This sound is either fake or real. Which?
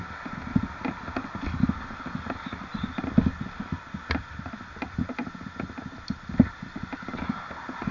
real